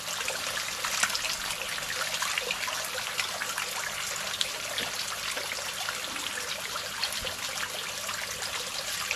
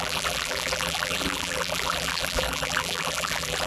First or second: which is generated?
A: second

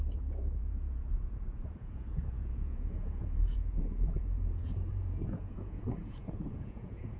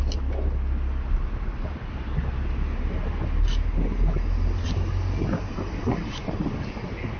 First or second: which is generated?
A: first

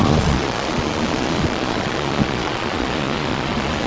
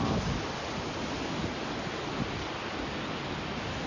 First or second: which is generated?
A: first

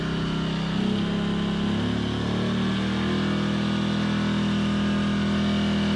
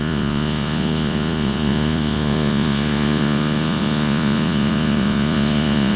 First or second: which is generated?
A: second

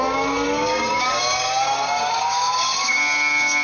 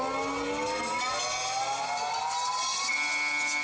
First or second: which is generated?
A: first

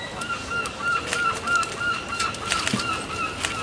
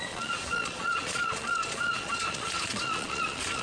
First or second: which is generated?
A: second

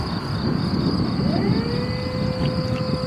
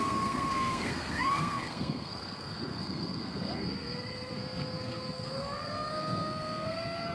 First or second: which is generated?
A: second